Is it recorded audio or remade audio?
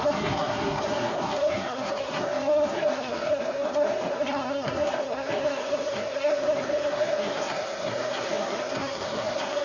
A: remade